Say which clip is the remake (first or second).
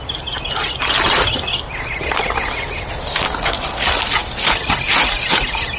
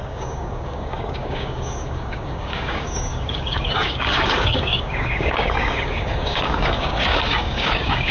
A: second